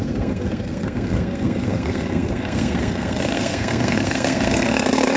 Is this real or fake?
fake